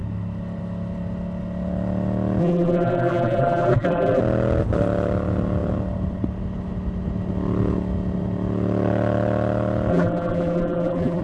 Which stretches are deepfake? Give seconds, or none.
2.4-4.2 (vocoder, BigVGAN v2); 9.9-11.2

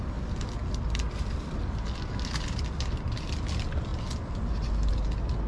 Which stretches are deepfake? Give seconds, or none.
0.6-3.3 (vocoder, BigVGAN v2)

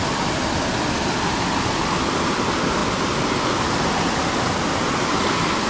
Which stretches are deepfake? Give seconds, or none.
none

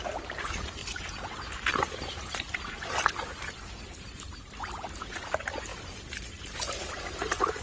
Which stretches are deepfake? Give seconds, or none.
0.0-7.6 (vocoder, BigVGAN v2)

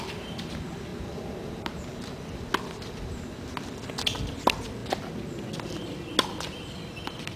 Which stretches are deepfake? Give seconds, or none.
0.9-1.8 (vocoder, BigVGAN v2)

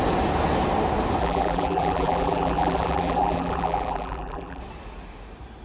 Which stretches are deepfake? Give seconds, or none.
1.2-4.6 (vocoder, BigVGAN v2)

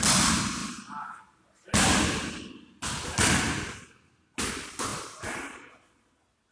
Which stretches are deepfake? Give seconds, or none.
4.9-5.7 (vocoder, BigVGAN v2)

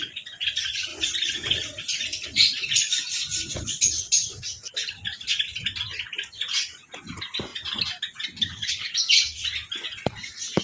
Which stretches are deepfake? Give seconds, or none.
0.9-3.8 (vocoder, BigVGAN v2)